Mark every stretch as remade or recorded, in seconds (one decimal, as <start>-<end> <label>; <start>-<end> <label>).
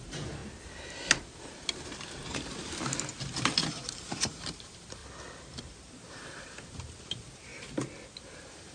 0.0-0.4 remade; 0.4-2.3 recorded; 2.3-3.1 remade; 3.1-3.7 recorded; 3.7-5.0 remade; 5.0-5.6 recorded; 5.6-7.5 remade; 7.5-8.2 recorded; 8.2-8.7 remade